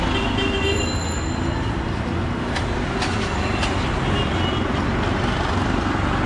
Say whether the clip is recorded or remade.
recorded